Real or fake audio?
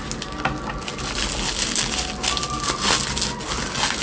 real